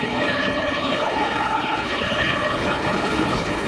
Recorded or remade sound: remade